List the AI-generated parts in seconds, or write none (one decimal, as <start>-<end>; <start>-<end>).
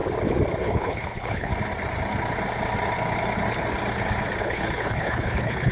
0.6-1.5; 4.4-5.7